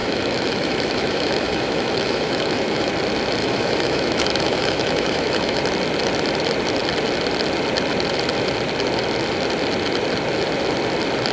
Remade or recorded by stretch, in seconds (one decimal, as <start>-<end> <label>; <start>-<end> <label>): 0.0-2.9 remade; 2.9-3.4 recorded; 3.4-5.6 remade; 5.6-11.3 recorded

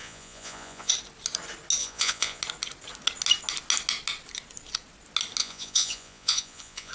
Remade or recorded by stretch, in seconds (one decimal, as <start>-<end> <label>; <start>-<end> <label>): 0.0-0.9 remade; 0.9-1.8 recorded; 1.8-2.4 remade; 2.4-5.4 recorded; 5.4-6.9 remade

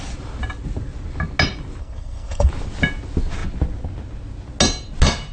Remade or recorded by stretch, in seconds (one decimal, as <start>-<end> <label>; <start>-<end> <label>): 0.0-1.8 recorded; 1.8-2.5 remade; 2.5-5.3 recorded

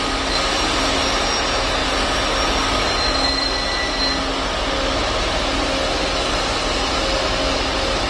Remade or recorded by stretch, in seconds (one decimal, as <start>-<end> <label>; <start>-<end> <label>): 0.0-8.1 recorded